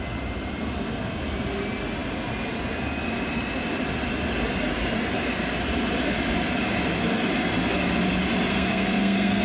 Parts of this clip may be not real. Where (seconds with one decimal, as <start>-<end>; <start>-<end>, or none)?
8.5-9.4